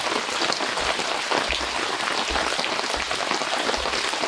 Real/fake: real